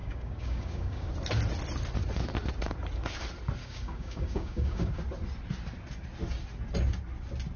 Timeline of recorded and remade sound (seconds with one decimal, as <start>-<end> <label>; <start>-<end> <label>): 0.0-1.1 remade; 1.1-3.6 recorded; 3.6-4.9 remade; 4.9-7.6 recorded